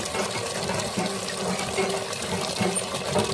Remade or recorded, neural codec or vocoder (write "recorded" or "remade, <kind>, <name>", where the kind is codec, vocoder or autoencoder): recorded